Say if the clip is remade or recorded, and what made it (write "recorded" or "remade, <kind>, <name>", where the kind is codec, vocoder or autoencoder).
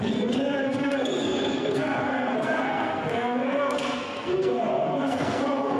remade, codec, SNAC